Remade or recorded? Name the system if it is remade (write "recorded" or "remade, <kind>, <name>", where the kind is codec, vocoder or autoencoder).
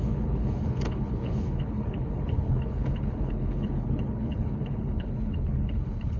remade, codec, HILCodec